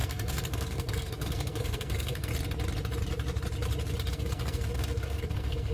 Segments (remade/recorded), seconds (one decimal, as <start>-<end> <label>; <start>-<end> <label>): 0.0-2.3 remade; 2.3-4.1 recorded; 4.1-5.7 remade